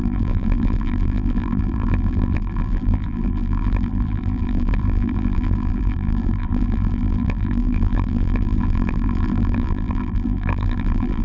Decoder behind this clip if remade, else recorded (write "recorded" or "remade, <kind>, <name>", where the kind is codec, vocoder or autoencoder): remade, vocoder, BigVGAN v2